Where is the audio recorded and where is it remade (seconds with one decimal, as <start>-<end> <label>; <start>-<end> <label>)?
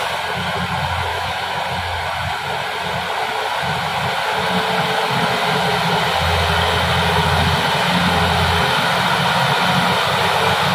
0.0-1.1 recorded; 1.1-1.6 remade; 1.6-10.7 recorded